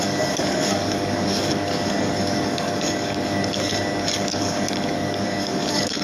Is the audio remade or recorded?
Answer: remade